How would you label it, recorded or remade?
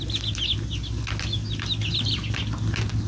recorded